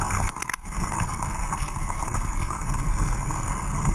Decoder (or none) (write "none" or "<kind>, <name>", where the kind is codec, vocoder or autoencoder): codec, SNAC